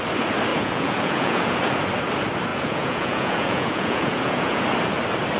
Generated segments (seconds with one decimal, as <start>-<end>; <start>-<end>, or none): 0.5-1.6; 2.5-4.6